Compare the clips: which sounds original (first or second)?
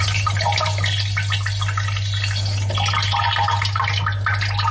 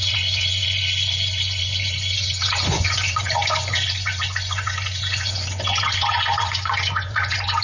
first